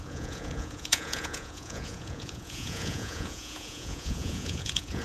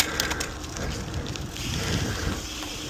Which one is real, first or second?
second